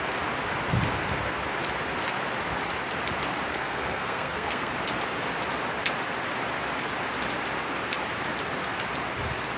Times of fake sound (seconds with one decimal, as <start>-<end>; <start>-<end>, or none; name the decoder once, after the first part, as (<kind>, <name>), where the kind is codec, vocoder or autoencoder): 3.5-4.7 (codec, SNAC)